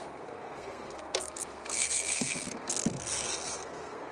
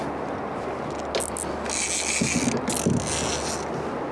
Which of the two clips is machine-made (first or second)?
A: first